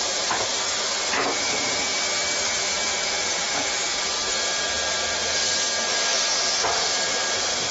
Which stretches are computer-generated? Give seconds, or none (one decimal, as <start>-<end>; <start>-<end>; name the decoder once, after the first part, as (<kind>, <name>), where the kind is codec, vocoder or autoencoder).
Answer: 0.0-1.9 (vocoder, BigVGAN v2); 6.5-7.7